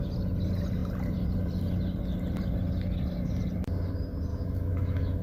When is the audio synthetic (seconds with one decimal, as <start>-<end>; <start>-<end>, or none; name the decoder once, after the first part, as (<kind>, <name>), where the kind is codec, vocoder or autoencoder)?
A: 4.3-5.2 (autoencoder, DAC-VAE)